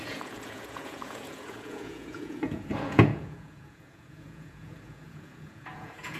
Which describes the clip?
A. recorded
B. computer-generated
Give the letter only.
B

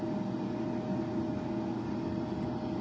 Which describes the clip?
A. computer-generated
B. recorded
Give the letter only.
B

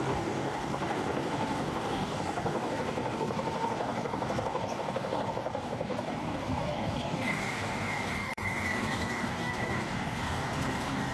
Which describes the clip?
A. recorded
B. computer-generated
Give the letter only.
B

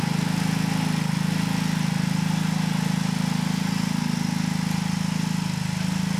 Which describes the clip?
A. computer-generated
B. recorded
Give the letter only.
B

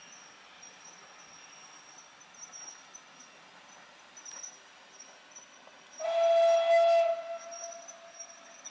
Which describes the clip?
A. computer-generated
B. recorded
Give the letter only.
B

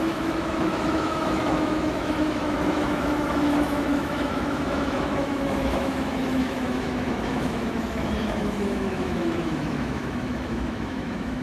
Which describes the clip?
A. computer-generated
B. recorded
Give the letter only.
A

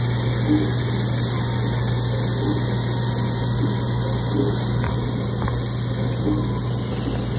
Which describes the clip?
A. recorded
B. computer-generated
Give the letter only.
A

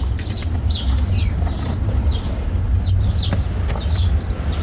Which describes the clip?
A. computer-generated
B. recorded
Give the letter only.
B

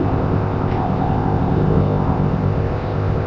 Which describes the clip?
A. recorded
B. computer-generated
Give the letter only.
B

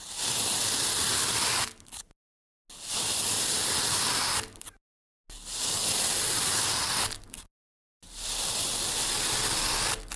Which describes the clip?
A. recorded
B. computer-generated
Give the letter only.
A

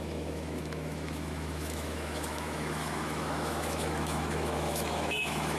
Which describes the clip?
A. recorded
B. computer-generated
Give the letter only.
B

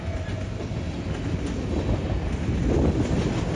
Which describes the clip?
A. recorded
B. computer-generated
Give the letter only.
A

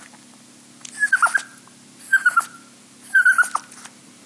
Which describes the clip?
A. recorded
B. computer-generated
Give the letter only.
A